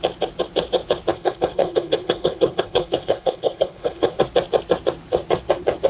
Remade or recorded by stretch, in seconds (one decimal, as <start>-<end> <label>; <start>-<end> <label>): 0.0-1.1 recorded; 1.1-4.2 remade; 4.2-5.9 recorded